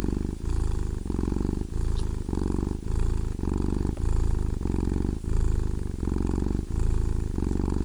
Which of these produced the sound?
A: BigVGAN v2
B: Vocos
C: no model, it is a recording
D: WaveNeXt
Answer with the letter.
C